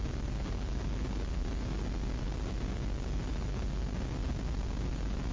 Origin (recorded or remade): recorded